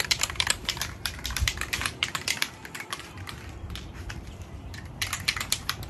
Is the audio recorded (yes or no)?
no